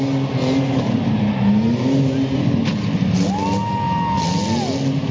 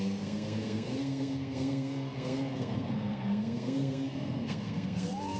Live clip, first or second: first